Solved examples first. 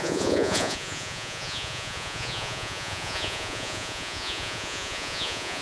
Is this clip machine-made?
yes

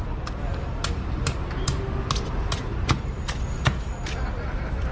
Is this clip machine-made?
no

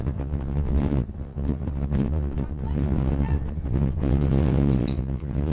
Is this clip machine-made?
yes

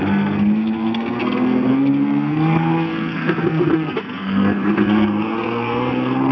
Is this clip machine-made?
yes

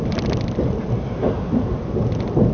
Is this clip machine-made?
no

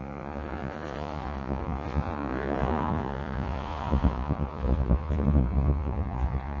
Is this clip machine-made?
yes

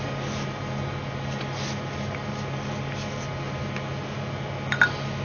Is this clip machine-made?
no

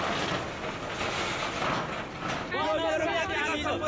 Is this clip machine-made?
no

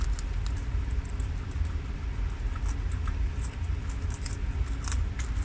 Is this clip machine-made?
no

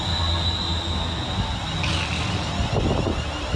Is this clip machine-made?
no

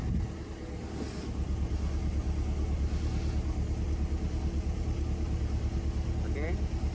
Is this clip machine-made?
no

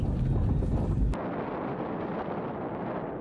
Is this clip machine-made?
no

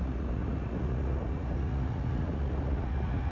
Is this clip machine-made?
yes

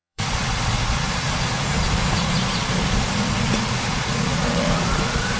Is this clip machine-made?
yes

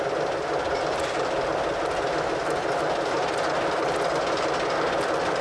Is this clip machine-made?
no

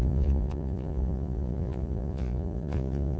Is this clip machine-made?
yes